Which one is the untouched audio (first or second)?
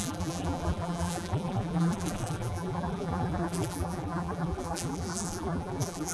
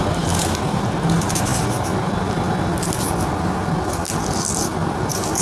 second